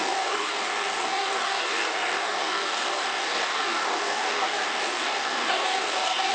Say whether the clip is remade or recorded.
remade